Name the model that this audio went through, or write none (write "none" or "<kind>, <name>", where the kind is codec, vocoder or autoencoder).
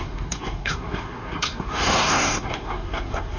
codec, SNAC